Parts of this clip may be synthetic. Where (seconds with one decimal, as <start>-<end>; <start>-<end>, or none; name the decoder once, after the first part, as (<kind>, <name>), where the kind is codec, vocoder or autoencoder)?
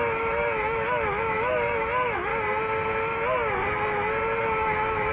0.0-2.3 (autoencoder, DAC-VAE); 4.4-5.1